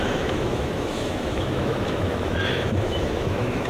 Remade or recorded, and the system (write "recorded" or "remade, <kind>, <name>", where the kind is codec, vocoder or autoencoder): remade, autoencoder, DAC-VAE